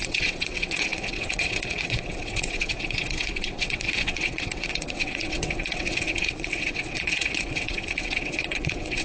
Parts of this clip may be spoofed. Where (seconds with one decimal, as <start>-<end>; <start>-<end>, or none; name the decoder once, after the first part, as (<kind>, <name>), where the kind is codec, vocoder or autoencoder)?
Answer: 0.0-9.0 (vocoder, WaveNeXt)